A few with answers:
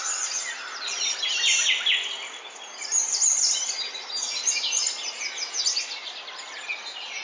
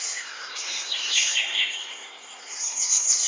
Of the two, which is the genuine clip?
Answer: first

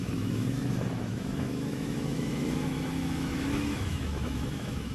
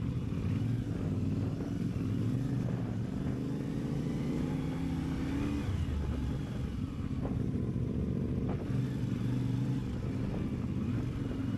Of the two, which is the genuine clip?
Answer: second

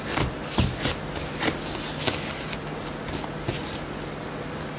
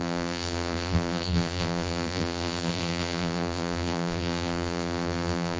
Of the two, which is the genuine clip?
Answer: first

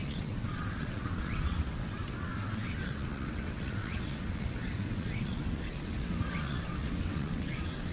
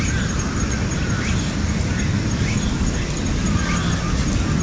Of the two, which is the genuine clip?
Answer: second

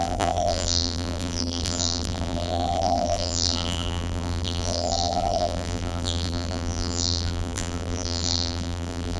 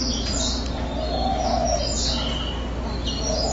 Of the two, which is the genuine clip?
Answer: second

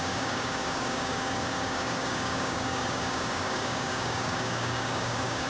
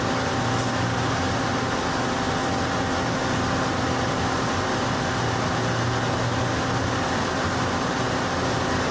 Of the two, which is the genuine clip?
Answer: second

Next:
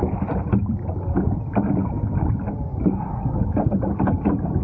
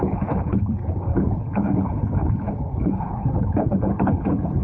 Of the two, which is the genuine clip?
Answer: first